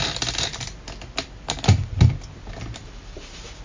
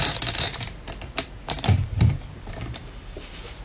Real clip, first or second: first